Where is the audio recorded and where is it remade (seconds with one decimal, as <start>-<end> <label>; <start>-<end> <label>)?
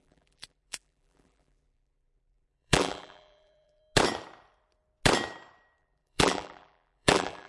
0.0-3.8 remade; 3.8-5.8 recorded; 5.8-7.5 remade